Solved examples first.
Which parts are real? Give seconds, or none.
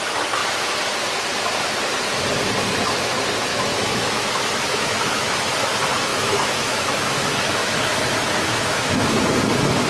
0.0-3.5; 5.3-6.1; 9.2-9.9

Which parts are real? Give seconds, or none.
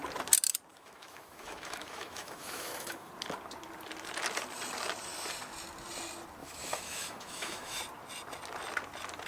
0.0-0.7; 3.1-6.4; 7.8-9.3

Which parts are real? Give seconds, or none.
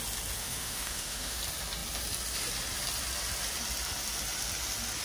0.0-0.4; 1.4-5.0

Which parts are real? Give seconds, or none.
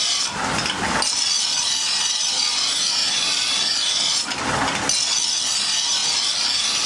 0.0-6.9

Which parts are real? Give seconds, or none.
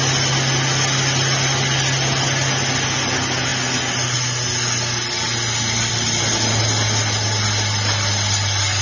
0.0-8.8